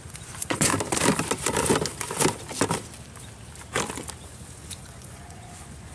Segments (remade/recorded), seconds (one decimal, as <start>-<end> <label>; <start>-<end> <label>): 0.0-0.7 remade; 0.7-4.2 recorded; 4.2-5.9 remade